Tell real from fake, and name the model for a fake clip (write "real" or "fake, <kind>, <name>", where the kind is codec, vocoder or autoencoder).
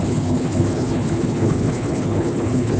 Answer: fake, codec, HILCodec